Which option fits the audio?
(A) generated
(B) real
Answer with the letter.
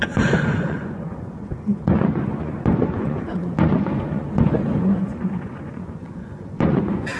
A